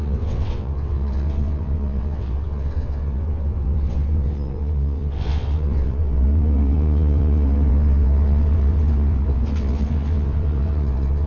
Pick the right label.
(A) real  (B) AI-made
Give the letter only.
B